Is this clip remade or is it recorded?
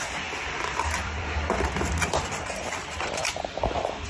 remade